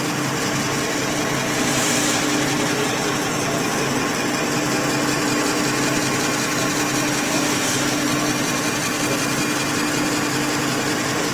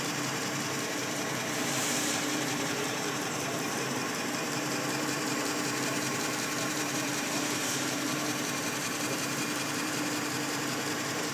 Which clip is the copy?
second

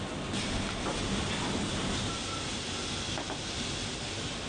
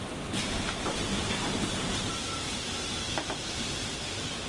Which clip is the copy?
second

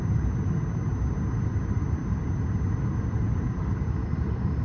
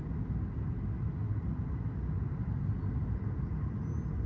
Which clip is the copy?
first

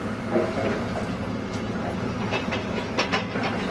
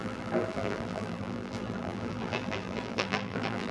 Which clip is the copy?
second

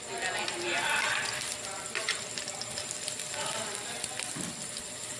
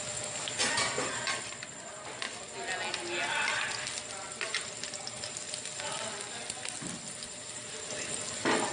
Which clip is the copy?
first